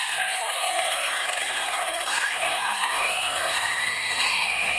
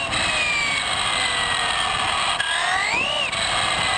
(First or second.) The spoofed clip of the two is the first